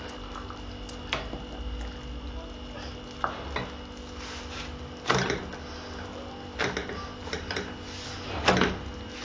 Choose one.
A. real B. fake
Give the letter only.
A